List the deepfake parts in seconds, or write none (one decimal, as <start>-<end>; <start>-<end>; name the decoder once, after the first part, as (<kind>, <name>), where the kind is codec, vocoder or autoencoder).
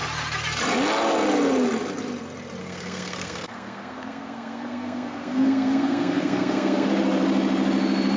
2.6-6.9 (codec, SNAC)